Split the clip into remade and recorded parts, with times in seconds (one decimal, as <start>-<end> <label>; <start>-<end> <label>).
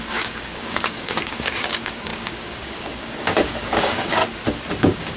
0.0-4.2 remade; 4.2-4.8 recorded; 4.8-5.2 remade